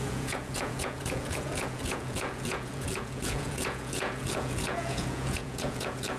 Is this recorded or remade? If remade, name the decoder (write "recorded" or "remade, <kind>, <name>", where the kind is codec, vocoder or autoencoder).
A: remade, vocoder, Vocos